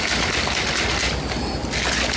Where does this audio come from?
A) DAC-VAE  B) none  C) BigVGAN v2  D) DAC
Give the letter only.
B